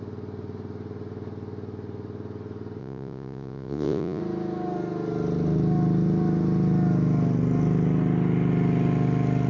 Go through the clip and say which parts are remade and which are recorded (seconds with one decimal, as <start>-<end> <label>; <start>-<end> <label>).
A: 0.0-2.8 recorded; 2.8-4.2 remade; 4.2-9.5 recorded